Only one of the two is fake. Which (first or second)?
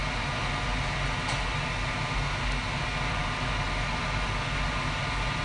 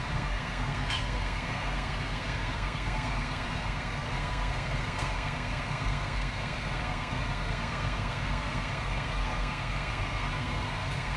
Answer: second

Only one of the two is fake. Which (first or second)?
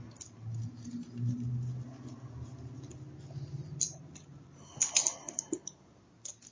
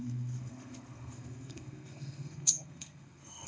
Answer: second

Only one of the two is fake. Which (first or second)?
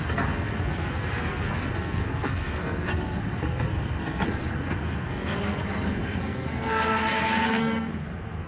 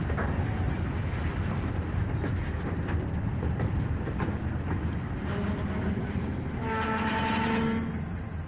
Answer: first